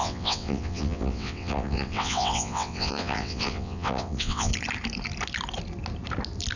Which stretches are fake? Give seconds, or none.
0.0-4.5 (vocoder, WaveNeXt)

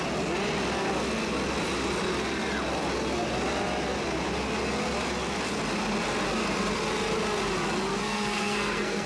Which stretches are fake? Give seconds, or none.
7.9-9.1 (codec, SNAC)

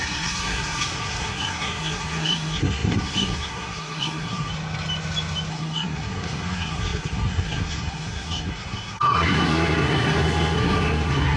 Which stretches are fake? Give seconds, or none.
0.0-4.5 (codec, SNAC); 5.5-11.4

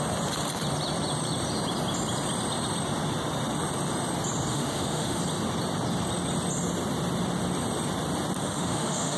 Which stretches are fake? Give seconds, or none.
4.5-5.2 (autoencoder, DAC-VAE); 8.4-9.2

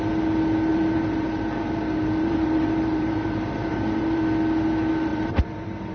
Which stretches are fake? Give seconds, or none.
0.7-4.2 (vocoder, BigVGAN v2); 5.1-5.9

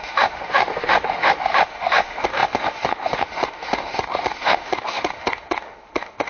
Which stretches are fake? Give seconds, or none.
0.0-6.3 (autoencoder, DAC-VAE)

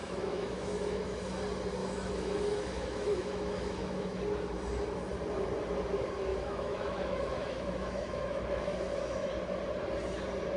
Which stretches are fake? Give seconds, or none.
0.0-1.4 (autoencoder, DAC-VAE); 1.8-4.2; 6.3-9.3

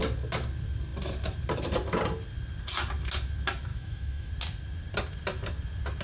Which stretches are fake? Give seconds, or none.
3.7-4.3 (autoencoder, DAC-VAE)